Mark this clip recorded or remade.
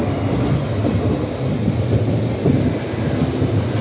recorded